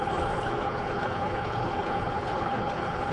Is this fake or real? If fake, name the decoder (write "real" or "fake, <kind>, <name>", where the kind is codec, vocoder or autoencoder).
fake, codec, HILCodec